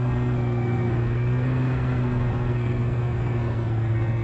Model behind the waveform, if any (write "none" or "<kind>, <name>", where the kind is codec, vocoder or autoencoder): codec, SNAC